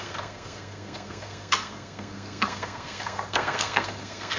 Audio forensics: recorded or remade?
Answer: remade